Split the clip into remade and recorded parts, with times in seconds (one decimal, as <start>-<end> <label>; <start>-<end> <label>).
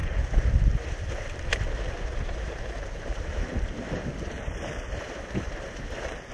0.0-6.3 remade